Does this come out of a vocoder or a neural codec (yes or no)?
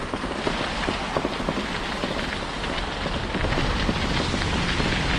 no